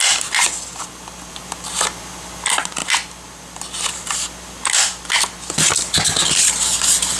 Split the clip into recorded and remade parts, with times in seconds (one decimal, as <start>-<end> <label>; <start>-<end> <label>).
0.0-7.2 recorded